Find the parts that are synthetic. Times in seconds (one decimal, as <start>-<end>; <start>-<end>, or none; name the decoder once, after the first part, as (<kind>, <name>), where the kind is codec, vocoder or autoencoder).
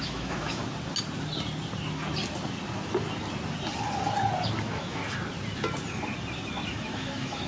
0.0-0.6 (autoencoder, DAC-VAE); 4.6-5.0; 6.7-7.5